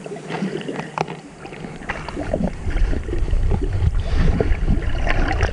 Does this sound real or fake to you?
real